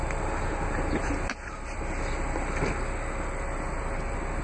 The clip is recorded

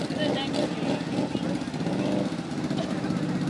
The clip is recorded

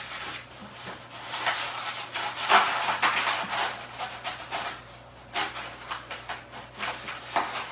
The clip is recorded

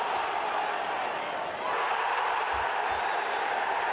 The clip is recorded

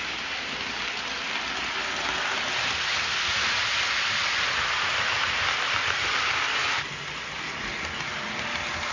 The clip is recorded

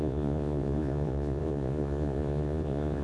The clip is remade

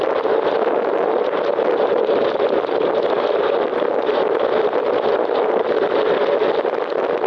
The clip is recorded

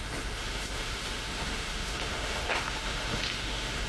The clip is remade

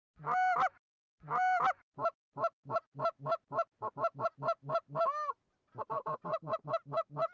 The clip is recorded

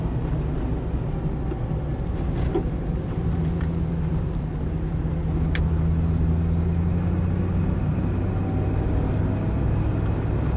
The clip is recorded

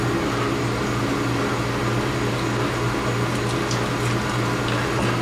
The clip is recorded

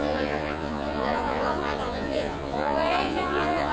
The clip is remade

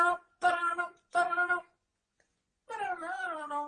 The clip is remade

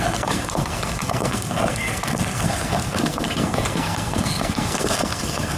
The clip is remade